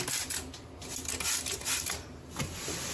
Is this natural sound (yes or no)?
yes